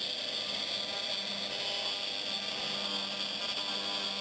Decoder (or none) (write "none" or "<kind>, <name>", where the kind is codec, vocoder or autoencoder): none